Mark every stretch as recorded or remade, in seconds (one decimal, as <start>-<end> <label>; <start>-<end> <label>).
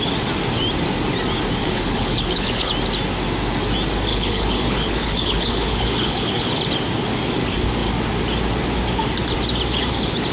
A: 0.0-1.6 recorded; 1.6-2.7 remade; 2.7-4.1 recorded; 4.1-6.6 remade; 6.6-10.3 recorded